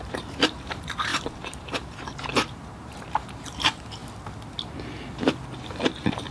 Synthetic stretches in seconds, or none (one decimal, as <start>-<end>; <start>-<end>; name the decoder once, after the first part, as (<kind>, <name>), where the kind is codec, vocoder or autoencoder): 0.0-4.0 (vocoder, BigVGAN v2); 5.7-6.3